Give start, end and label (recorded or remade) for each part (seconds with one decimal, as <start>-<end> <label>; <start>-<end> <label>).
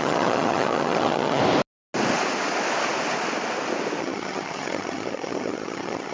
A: 0.0-1.4 remade; 1.4-4.0 recorded; 4.0-6.1 remade